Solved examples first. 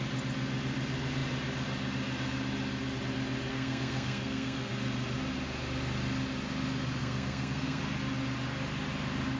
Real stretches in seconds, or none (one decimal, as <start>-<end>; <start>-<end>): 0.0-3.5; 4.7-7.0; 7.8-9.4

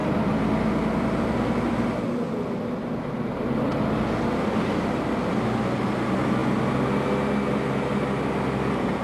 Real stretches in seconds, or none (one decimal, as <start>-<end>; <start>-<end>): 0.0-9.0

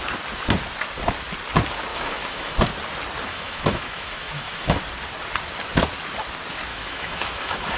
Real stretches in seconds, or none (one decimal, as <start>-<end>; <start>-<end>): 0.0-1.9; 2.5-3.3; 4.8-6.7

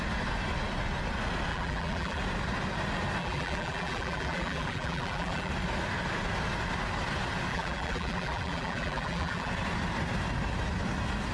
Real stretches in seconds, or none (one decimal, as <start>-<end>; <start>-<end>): 0.0-1.5; 2.2-3.2; 5.5-7.5; 9.5-11.3